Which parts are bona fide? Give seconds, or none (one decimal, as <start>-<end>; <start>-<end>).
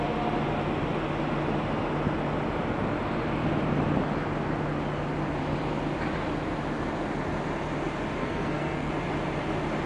0.0-8.2; 8.9-9.9